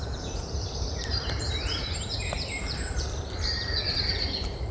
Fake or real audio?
fake